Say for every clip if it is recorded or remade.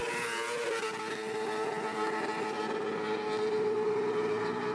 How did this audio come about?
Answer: recorded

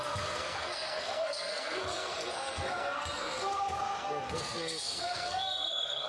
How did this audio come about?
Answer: remade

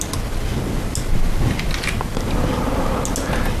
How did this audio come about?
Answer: recorded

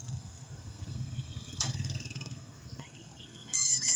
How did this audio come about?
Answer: remade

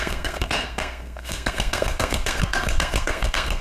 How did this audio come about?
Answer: remade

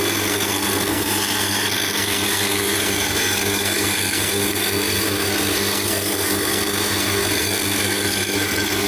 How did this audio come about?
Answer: remade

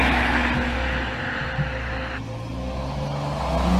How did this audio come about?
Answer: recorded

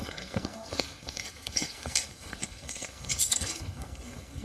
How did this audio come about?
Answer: remade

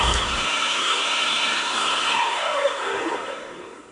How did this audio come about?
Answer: remade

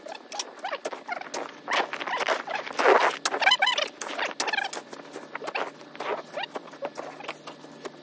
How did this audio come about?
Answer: recorded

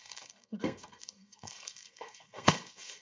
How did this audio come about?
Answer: remade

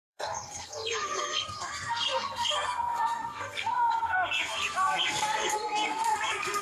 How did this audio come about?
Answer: remade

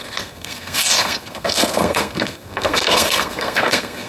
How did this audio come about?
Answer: remade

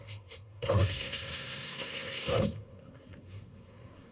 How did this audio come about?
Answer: remade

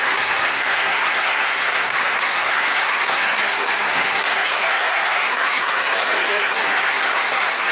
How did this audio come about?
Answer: remade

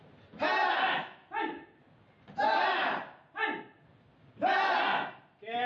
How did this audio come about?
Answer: recorded